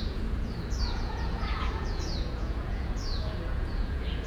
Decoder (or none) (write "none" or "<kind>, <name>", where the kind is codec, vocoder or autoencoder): vocoder, Vocos